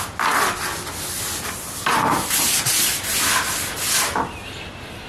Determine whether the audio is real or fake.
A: real